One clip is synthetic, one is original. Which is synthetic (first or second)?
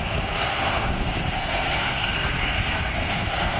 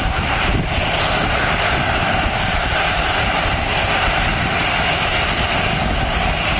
first